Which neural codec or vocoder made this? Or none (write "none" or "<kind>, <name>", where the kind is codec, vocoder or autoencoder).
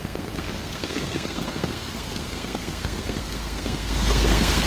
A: codec, SNAC